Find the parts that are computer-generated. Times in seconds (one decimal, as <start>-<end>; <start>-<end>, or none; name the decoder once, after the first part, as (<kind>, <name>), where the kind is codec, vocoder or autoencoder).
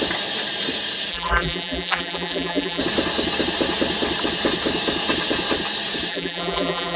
1.1-2.8 (vocoder, BigVGAN v2); 6.1-7.0